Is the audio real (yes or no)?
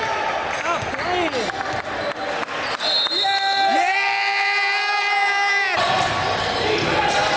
yes